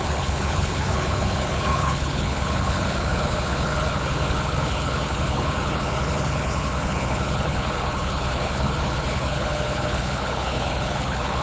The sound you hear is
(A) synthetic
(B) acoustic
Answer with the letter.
A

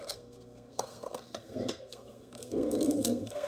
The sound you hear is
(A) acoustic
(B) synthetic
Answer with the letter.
B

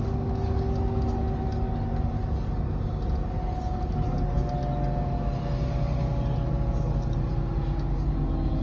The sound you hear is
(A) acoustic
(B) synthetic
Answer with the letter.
A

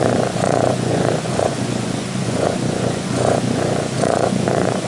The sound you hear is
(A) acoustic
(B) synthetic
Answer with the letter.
B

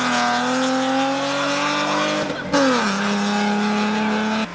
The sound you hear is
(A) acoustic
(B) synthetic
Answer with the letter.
A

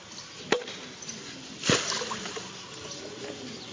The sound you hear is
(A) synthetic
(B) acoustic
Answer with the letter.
B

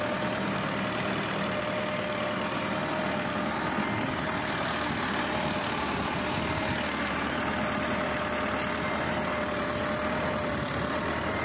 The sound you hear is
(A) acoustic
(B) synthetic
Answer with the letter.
A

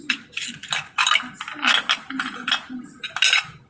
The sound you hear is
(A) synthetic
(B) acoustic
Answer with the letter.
B